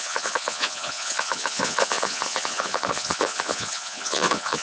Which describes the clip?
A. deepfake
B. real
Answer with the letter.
A